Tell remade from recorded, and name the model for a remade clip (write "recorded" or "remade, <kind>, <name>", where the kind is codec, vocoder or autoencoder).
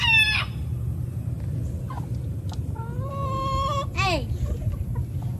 recorded